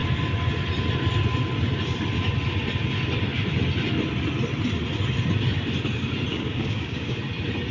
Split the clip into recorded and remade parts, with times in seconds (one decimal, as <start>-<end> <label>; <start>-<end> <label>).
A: 0.0-6.3 recorded; 6.3-7.2 remade; 7.2-7.7 recorded